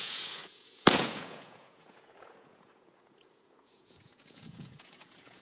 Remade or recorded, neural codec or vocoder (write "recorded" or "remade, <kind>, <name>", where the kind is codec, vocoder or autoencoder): remade, vocoder, Vocos